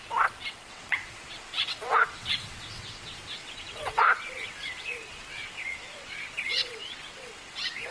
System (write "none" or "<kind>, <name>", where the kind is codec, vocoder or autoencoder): vocoder, WaveNeXt